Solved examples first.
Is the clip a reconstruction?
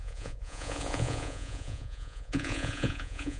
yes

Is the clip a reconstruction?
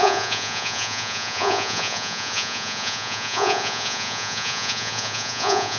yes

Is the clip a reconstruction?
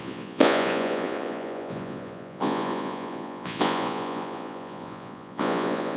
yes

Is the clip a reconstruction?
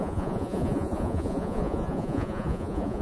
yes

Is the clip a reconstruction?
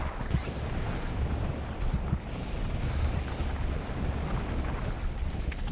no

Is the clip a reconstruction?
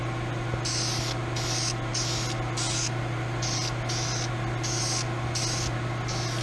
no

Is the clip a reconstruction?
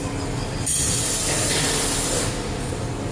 no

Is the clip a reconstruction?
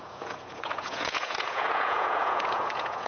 yes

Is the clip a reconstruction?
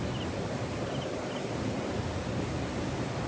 no